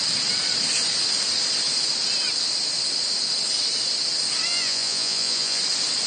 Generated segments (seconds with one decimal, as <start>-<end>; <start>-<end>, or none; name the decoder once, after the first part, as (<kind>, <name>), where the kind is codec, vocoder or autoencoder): 4.5-5.6 (vocoder, Vocos)